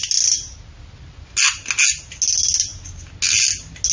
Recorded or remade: recorded